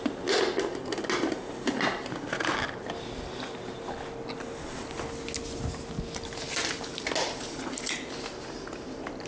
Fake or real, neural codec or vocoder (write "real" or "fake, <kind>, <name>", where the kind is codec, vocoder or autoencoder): real